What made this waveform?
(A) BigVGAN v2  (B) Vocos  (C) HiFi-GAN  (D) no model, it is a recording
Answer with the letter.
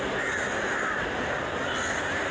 D